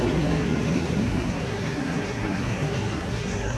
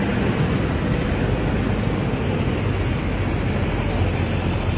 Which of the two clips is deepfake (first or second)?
first